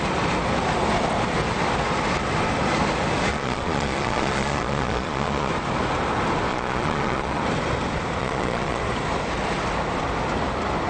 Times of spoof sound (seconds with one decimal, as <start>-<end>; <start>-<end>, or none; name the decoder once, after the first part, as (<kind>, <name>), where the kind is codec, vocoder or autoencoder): 3.3-5.5 (vocoder, Vocos); 6.5-7.4; 8.2-8.8